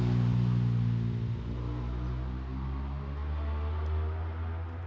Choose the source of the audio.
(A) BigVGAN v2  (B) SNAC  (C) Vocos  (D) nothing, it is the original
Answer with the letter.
D